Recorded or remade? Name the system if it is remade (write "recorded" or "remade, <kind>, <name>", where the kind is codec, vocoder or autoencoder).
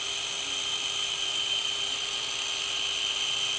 recorded